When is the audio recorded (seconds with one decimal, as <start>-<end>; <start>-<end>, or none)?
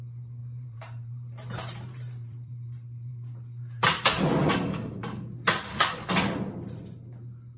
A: 0.0-0.4; 4.5-7.6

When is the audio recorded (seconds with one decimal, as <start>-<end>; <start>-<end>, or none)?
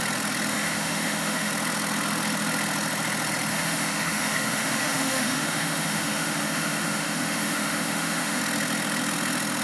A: 0.0-0.5; 1.5-3.5; 8.4-9.6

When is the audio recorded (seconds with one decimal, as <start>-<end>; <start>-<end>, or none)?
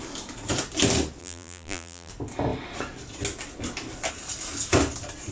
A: 0.0-1.2; 2.1-5.3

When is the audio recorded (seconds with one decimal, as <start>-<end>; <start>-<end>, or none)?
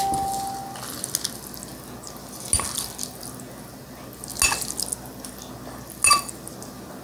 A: 0.0-7.0